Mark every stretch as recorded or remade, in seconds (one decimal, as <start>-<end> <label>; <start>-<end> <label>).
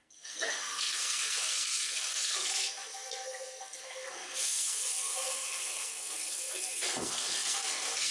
0.0-8.1 remade